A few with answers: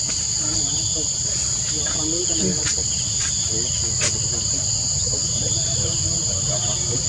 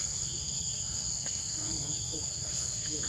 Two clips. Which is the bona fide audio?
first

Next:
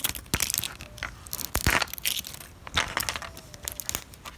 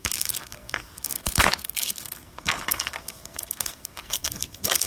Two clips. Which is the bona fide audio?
first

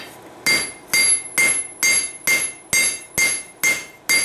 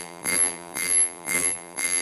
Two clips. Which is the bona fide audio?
first